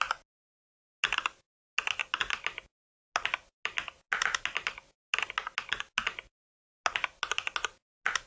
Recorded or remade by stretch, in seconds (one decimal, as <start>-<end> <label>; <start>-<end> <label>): 0.0-8.3 recorded